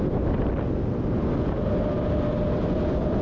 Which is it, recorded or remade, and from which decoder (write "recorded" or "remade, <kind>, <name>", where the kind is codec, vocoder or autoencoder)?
recorded